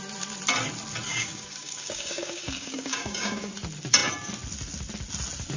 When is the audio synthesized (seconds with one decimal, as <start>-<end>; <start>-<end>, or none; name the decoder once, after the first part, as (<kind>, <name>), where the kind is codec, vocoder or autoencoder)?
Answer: 1.1-3.5 (codec, DAC)